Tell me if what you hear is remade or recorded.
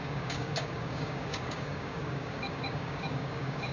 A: remade